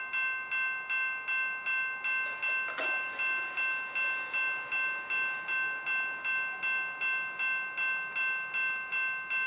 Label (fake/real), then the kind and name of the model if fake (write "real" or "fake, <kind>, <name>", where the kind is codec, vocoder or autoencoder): real